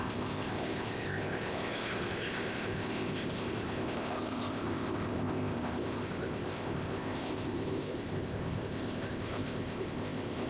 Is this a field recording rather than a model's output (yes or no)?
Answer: no